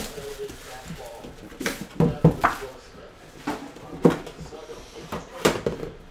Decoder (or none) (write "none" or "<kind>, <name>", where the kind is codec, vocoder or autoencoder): vocoder, BigVGAN v2